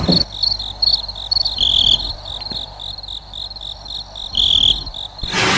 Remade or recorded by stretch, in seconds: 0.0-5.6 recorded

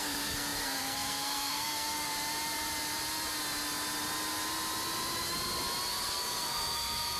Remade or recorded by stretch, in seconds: 0.0-2.1 remade; 2.1-5.9 recorded; 5.9-7.2 remade

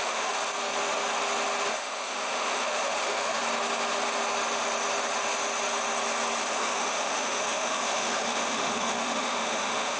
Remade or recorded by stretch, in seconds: 0.0-0.4 remade; 0.4-1.7 recorded; 1.7-3.4 remade; 3.4-6.4 recorded; 6.4-10.0 remade

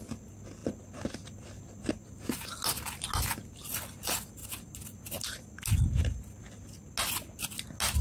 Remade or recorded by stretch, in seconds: 0.0-8.0 recorded